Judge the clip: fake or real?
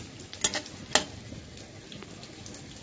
real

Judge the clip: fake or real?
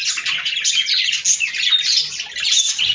real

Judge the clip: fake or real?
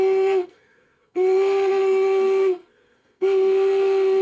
fake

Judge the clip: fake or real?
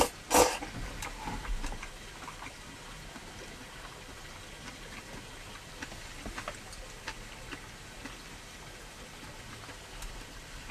real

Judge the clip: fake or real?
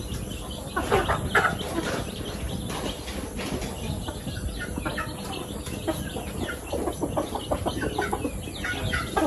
real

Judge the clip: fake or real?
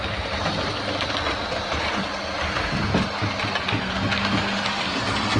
real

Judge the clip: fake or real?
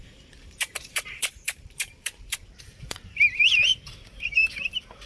fake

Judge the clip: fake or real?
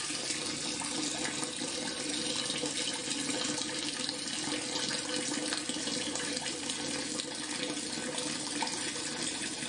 real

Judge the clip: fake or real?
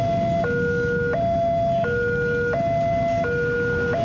real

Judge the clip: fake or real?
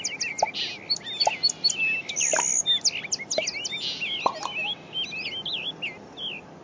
real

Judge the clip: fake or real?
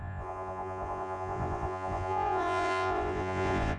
fake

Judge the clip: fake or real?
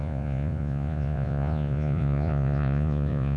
fake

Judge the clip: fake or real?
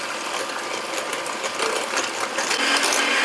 real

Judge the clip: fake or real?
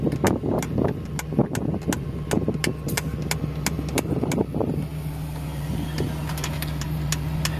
real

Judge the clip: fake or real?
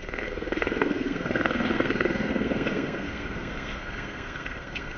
fake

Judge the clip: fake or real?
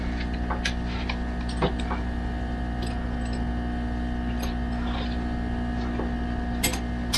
real